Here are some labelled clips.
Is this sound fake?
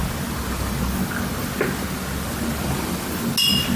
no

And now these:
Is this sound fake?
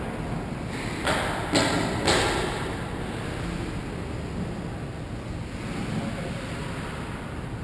no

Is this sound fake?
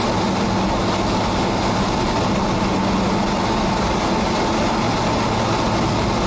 no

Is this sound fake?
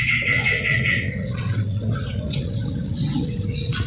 yes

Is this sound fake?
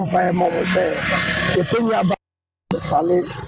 no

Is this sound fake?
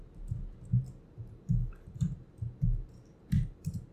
no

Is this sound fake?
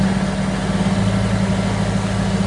no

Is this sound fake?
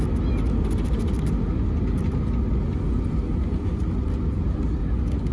no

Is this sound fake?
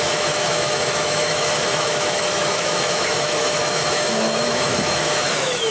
yes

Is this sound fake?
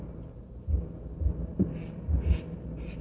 no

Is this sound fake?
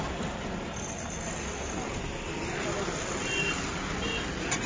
no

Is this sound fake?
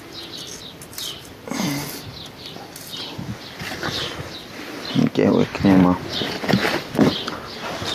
no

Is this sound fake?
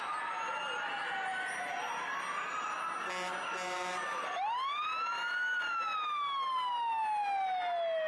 no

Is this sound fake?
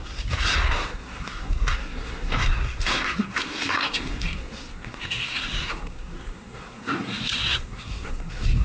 yes